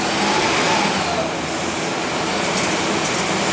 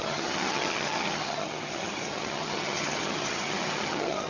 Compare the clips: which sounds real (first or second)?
first